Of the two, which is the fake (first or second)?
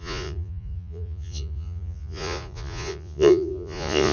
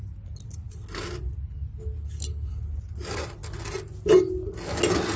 first